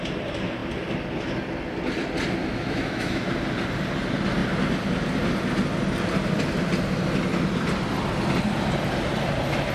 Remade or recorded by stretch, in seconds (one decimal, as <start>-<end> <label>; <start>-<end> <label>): 0.0-2.4 recorded; 2.4-3.3 remade; 3.3-9.7 recorded

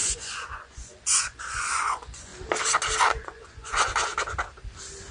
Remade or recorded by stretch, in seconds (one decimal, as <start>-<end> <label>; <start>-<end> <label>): 0.0-2.3 remade; 2.3-3.1 recorded; 3.1-4.1 remade; 4.1-5.1 recorded

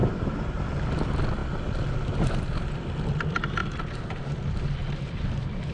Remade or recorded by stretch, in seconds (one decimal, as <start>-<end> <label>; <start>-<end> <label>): 0.0-0.6 remade; 0.6-3.6 recorded; 3.6-4.2 remade; 4.2-4.8 recorded; 4.8-5.3 remade; 5.3-5.7 recorded

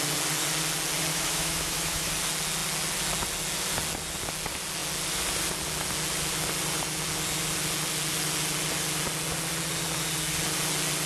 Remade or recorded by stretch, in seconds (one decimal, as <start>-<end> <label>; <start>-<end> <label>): 0.0-1.1 recorded; 1.1-2.1 remade; 2.1-11.1 recorded

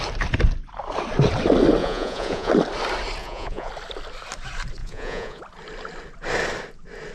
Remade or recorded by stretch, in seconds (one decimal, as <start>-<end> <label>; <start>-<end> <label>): 0.0-1.8 recorded; 1.8-2.5 remade; 2.5-3.2 recorded; 3.2-3.7 remade; 3.7-4.8 recorded; 4.8-5.4 remade; 5.4-7.1 recorded

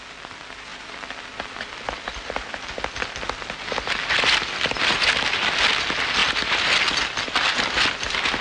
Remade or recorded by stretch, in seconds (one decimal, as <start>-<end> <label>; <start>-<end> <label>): 0.0-8.4 recorded